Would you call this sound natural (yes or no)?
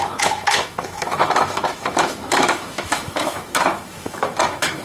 no